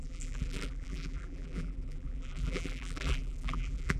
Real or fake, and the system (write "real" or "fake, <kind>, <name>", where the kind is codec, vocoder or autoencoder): fake, vocoder, BigVGAN v2